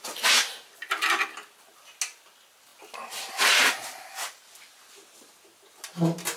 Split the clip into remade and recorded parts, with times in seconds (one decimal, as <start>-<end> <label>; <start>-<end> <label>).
0.0-6.4 recorded